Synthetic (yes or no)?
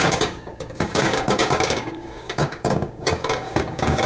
yes